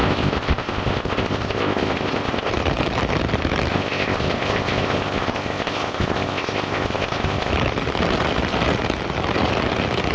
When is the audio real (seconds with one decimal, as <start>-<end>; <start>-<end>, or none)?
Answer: 2.5-3.7; 7.5-10.1